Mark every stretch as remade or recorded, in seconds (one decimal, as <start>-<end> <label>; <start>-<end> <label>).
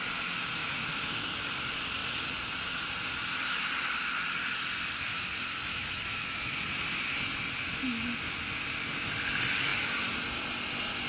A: 0.0-5.7 recorded; 5.7-6.5 remade; 6.5-11.1 recorded